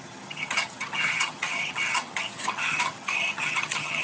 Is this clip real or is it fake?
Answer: fake